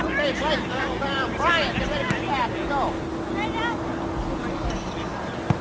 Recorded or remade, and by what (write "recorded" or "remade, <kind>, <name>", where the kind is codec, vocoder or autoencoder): recorded